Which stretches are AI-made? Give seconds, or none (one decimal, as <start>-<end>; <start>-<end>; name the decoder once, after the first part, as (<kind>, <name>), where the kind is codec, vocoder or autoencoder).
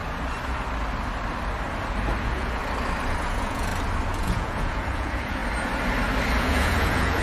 2.2-2.6 (vocoder, Vocos); 3.1-3.7; 4.2-5.4; 6.4-7.2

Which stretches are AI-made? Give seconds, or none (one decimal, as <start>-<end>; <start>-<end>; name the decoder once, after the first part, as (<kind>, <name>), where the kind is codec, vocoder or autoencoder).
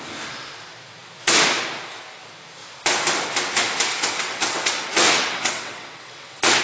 3.9-6.6 (vocoder, WaveNeXt)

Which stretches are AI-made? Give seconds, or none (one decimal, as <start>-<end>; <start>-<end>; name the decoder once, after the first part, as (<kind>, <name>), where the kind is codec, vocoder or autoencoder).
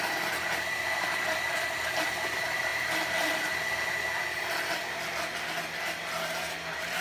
none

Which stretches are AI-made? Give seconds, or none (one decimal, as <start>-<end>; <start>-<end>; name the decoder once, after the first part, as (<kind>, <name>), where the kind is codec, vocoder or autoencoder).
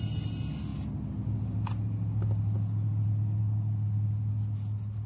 none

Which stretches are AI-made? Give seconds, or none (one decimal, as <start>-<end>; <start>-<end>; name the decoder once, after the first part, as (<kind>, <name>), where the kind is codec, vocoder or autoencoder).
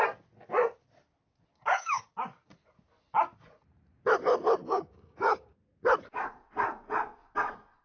1.5-2.0 (codec, DAC); 4.6-5.2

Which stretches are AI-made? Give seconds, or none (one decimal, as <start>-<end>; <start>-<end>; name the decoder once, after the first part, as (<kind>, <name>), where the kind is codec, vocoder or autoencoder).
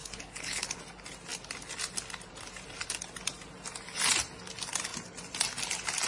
0.0-0.8 (codec, HILCodec)